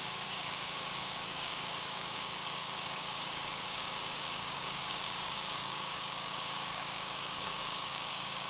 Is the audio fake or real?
fake